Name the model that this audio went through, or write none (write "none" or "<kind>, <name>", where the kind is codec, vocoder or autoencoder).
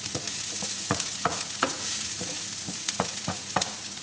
vocoder, Vocos